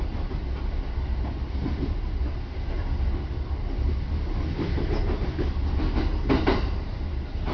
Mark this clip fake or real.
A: real